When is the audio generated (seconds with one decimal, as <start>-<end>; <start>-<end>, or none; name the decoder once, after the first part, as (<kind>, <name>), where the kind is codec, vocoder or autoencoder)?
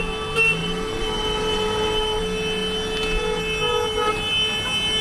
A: 0.6-2.2 (vocoder, BigVGAN v2)